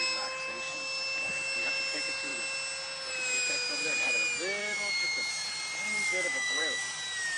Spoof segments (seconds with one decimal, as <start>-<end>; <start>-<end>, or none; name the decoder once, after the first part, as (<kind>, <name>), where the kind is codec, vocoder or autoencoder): 4.6-5.3 (autoencoder, DAC-VAE); 6.1-6.8